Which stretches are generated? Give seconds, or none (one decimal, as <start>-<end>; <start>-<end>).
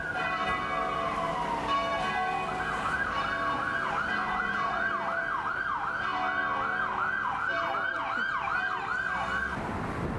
4.2-4.9